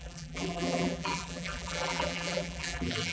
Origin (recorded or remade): remade